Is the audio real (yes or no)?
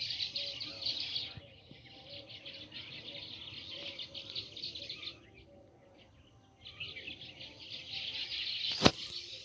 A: yes